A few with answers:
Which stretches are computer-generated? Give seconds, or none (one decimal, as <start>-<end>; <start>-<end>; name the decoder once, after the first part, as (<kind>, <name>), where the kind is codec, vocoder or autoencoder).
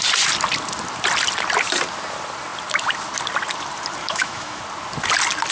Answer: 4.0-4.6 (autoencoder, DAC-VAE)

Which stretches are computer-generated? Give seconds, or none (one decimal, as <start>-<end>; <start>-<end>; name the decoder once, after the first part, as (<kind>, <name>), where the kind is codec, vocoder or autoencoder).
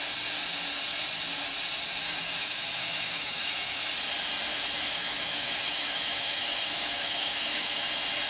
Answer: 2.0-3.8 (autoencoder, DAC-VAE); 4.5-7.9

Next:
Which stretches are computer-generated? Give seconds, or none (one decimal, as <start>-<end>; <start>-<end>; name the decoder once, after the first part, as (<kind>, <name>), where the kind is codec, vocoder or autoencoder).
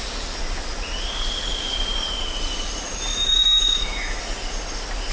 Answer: 3.1-4.2 (autoencoder, DAC-VAE)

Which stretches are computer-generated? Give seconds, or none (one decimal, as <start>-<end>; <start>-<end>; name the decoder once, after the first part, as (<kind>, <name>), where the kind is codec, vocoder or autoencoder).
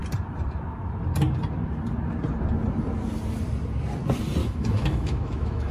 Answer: 4.4-5.7 (autoencoder, DAC-VAE)